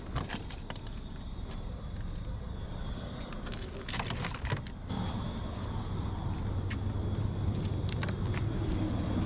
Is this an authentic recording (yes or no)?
no